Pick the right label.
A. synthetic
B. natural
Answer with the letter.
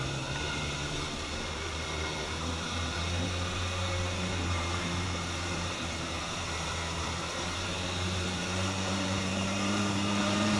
A